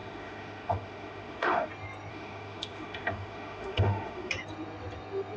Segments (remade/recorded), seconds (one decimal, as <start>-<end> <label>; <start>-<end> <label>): 0.0-1.7 remade; 1.7-2.1 recorded; 2.1-4.3 remade; 4.3-5.4 recorded